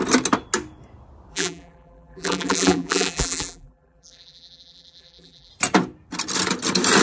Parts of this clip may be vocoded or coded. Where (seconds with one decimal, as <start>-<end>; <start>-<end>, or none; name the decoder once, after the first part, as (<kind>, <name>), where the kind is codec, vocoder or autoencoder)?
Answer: 1.3-5.5 (vocoder, BigVGAN v2)